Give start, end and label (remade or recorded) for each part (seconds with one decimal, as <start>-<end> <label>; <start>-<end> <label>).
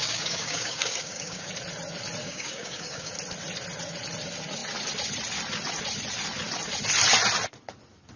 0.0-1.5 remade; 1.5-2.2 recorded; 2.2-3.1 remade; 3.1-8.2 recorded